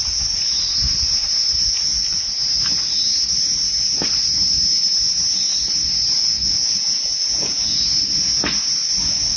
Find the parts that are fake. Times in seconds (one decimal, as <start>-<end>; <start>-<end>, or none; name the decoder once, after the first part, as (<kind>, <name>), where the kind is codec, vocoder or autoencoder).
6.2-7.8 (vocoder, Vocos)